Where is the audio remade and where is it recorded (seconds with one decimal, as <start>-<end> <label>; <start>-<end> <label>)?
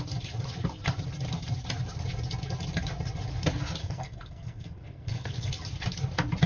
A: 0.0-3.8 recorded; 3.8-5.5 remade; 5.5-6.5 recorded